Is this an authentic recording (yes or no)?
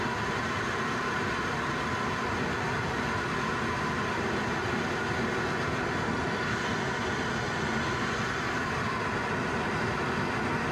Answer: yes